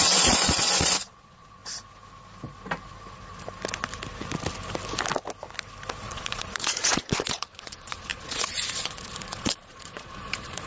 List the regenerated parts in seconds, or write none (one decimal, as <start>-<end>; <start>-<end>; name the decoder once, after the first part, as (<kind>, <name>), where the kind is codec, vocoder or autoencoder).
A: 0.0-1.6 (vocoder, Vocos); 6.0-10.7